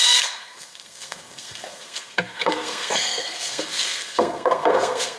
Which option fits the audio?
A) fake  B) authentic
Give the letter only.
A